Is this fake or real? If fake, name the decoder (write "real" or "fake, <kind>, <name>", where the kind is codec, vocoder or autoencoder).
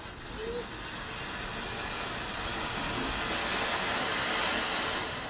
real